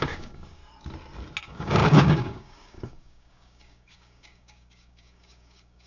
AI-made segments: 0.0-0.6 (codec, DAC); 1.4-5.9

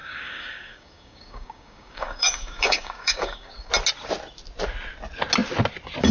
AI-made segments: 0.0-3.7 (codec, DAC)

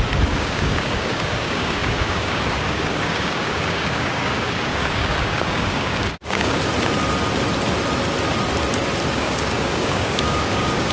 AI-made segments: 0.0-6.6 (codec, DAC); 9.1-10.9

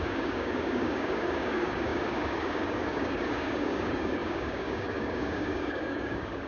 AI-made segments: 0.0-6.5 (codec, DAC)

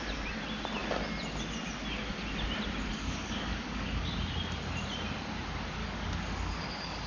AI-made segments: 2.9-4.1 (codec, DAC); 5.8-7.1

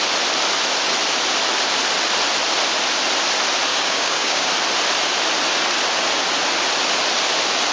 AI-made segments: 3.7-4.5 (codec, DAC)

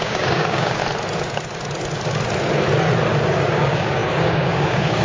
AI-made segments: 0.0-0.8 (codec, DAC); 3.5-5.0